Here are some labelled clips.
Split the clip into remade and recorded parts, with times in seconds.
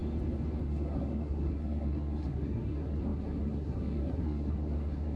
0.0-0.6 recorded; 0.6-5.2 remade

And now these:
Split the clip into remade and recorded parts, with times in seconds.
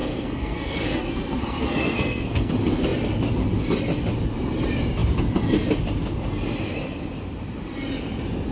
0.0-2.5 remade; 2.5-8.5 recorded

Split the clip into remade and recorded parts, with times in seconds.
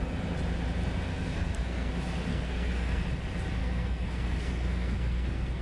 0.0-1.1 recorded; 1.1-1.9 remade; 1.9-2.3 recorded; 2.3-3.0 remade; 3.0-3.6 recorded; 3.6-5.6 remade